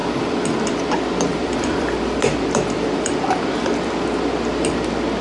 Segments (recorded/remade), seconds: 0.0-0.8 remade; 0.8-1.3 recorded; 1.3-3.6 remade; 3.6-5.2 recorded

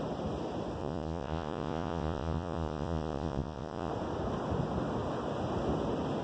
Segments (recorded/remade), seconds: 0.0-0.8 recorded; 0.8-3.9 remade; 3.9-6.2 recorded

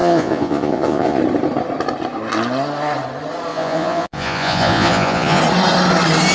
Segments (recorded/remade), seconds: 0.0-1.2 remade; 1.2-3.5 recorded; 3.5-5.4 remade; 5.4-6.3 recorded

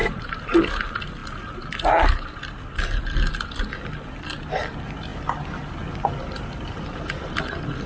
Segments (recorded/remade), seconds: 0.0-0.6 remade; 0.6-7.9 recorded